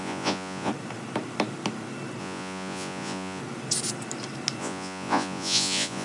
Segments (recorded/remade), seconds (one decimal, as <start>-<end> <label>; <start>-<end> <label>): 0.0-0.7 remade; 0.7-2.2 recorded; 2.2-3.4 remade; 3.4-4.6 recorded; 4.6-6.0 remade